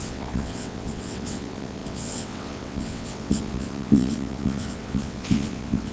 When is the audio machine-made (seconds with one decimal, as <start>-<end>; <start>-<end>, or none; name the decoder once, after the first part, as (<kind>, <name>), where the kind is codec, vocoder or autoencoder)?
0.0-5.9 (vocoder, WaveNeXt)